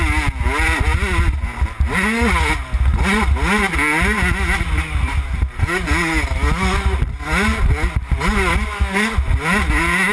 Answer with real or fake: real